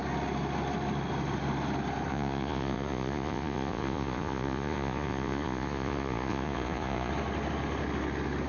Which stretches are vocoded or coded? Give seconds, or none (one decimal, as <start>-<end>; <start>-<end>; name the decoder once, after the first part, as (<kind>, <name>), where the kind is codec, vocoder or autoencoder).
2.1-7.1 (vocoder, Vocos)

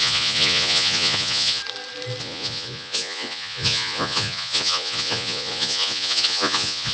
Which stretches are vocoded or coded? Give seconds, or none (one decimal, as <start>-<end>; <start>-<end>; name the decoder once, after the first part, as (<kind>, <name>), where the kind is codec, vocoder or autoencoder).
0.0-1.6 (vocoder, Vocos); 2.2-6.9

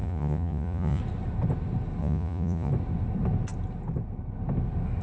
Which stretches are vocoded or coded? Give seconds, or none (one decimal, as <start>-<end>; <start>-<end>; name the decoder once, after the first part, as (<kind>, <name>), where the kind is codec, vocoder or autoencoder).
0.0-1.0 (vocoder, Vocos); 2.0-2.7

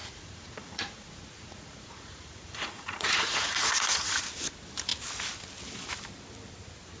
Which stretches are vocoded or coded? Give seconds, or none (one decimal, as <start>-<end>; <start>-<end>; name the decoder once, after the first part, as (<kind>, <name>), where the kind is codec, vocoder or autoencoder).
0.0-4.2 (vocoder, Vocos)